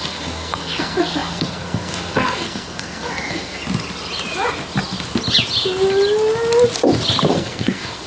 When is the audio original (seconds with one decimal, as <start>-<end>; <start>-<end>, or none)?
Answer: 3.6-7.3